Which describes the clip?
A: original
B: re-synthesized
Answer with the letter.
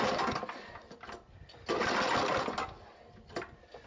A